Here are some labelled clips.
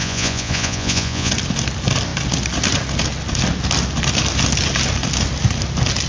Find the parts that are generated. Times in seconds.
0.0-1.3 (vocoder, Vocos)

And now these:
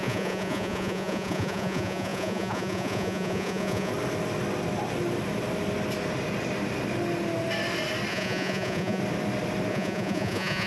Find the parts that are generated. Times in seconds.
0.0-3.9 (vocoder, Vocos); 8.1-9.0; 9.7-10.7